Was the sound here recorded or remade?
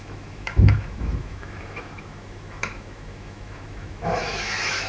remade